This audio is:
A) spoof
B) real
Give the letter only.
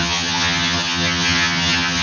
A